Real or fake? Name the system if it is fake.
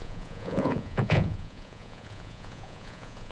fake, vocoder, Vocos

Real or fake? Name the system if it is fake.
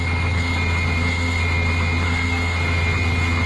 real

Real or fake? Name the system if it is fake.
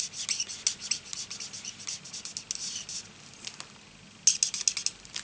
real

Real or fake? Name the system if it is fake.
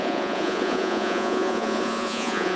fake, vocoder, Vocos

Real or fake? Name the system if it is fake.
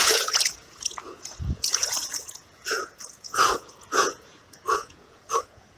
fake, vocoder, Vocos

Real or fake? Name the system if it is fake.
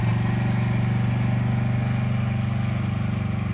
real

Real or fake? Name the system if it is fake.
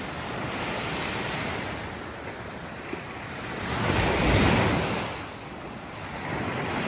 real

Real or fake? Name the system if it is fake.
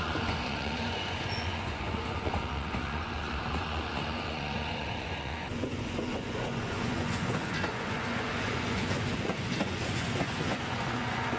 fake, vocoder, Vocos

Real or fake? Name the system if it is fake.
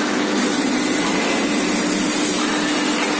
real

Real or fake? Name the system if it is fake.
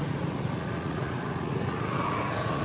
fake, vocoder, Vocos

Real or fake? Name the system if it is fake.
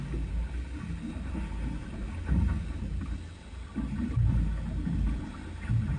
real